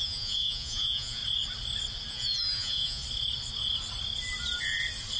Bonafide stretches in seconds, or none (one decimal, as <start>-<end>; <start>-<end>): 1.2-2.1; 3.0-5.2